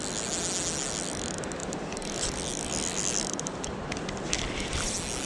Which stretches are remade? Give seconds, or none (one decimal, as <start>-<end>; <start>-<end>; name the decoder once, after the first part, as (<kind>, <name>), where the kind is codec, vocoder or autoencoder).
none